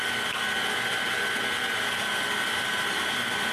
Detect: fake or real real